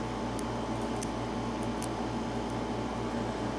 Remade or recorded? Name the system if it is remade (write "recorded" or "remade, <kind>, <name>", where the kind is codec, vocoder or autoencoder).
recorded